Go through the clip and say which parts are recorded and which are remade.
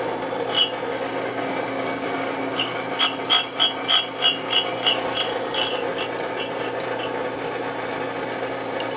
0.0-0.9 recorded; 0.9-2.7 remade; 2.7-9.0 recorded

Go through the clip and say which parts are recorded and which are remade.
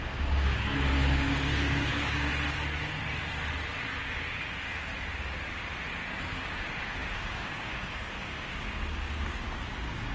0.0-2.3 remade; 2.3-4.0 recorded; 4.0-4.9 remade; 4.9-6.2 recorded; 6.2-10.1 remade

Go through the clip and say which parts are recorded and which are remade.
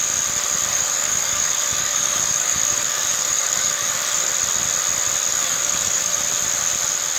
0.0-0.7 recorded; 0.7-4.3 remade; 4.3-5.3 recorded; 5.3-6.2 remade; 6.2-7.2 recorded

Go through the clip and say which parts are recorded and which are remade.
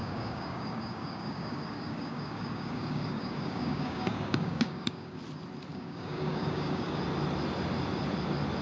0.0-5.2 remade; 5.2-5.7 recorded; 5.7-7.0 remade; 7.0-8.6 recorded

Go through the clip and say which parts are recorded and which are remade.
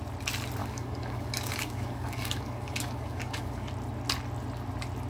0.0-0.6 recorded; 0.6-3.7 remade; 3.7-5.1 recorded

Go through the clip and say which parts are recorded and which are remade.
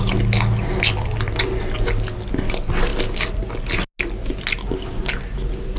0.0-4.6 recorded; 4.6-5.1 remade; 5.1-5.8 recorded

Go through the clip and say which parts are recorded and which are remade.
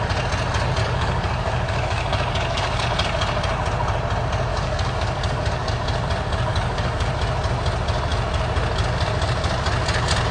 0.0-0.8 recorded; 0.8-2.8 remade; 2.8-4.5 recorded; 4.5-5.7 remade; 5.7-6.5 recorded; 6.5-7.1 remade; 7.1-10.3 recorded